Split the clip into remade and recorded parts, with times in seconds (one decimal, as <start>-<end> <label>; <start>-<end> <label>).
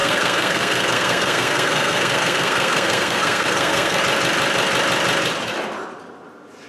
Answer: 0.0-4.0 remade; 4.0-6.7 recorded